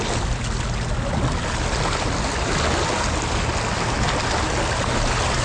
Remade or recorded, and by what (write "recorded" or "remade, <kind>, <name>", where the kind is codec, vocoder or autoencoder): recorded